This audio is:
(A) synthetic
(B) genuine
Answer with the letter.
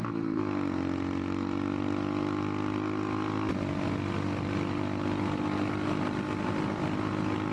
B